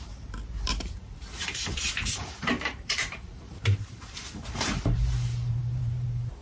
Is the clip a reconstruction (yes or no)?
yes